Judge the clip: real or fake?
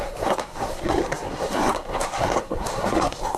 fake